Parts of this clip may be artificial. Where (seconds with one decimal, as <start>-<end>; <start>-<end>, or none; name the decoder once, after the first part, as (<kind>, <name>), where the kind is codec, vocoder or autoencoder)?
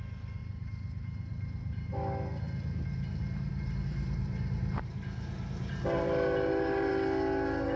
0.4-1.9 (vocoder, BigVGAN v2); 3.1-6.9